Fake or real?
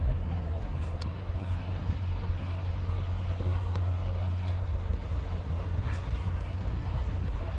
fake